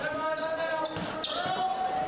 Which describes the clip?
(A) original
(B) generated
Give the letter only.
A